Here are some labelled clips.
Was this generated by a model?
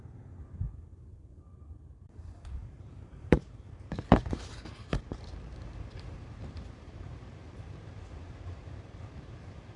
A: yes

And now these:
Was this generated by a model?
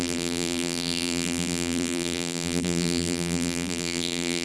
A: yes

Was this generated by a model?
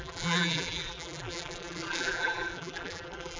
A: yes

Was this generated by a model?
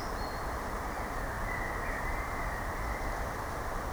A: yes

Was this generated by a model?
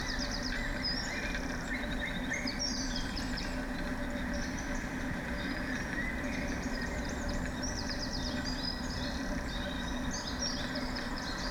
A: yes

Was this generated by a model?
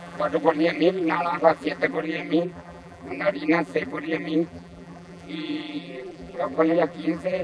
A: yes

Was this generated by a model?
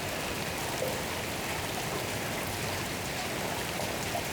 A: no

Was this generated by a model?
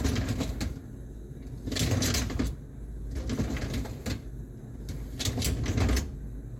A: no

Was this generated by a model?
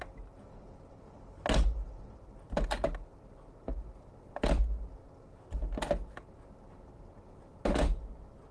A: no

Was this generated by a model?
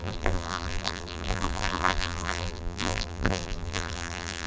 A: yes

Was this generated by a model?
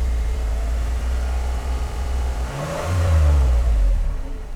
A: yes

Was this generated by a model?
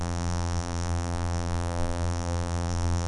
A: yes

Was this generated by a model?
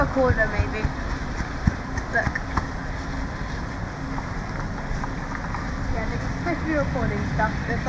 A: no